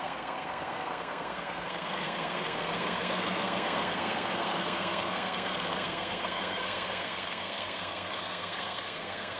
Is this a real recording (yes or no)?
no